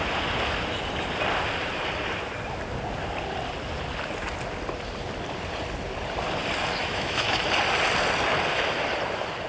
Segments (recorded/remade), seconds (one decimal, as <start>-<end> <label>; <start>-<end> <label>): 0.0-6.8 recorded; 6.8-7.4 remade; 7.4-9.5 recorded